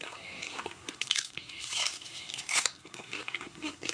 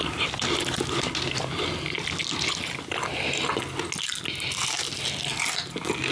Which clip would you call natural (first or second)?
second